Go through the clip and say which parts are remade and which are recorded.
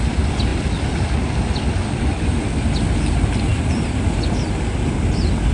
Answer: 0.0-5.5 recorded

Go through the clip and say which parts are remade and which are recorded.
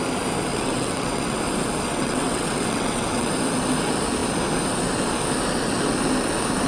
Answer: 0.0-0.5 recorded; 0.5-1.4 remade; 1.4-1.9 recorded; 1.9-3.3 remade; 3.3-6.7 recorded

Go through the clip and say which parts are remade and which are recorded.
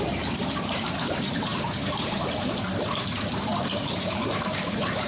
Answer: 0.0-5.1 remade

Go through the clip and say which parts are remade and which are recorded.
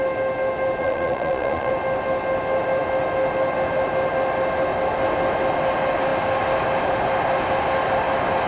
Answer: 0.0-0.8 recorded; 0.8-1.7 remade; 1.7-8.5 recorded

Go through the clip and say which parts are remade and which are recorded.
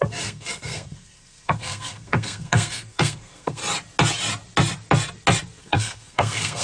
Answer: 0.0-3.6 remade; 3.6-5.6 recorded; 5.6-6.6 remade